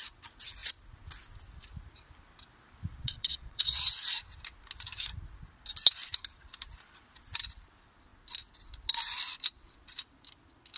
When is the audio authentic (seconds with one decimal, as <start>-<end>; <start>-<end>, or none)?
0.0-2.9; 3.9-10.8